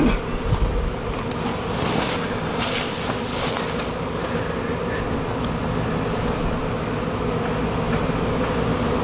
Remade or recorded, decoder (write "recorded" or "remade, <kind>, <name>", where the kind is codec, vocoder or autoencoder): recorded